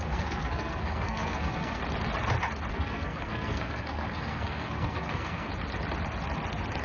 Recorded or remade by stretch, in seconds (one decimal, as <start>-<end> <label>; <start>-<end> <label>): 0.0-1.8 remade; 1.8-2.7 recorded; 2.7-5.5 remade; 5.5-6.8 recorded